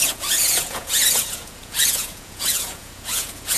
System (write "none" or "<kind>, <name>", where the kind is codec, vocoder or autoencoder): vocoder, Vocos